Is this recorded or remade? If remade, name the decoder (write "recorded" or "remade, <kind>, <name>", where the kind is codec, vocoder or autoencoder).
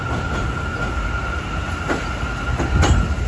recorded